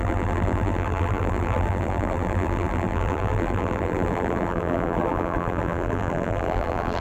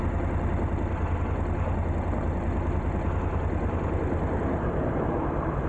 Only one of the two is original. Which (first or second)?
second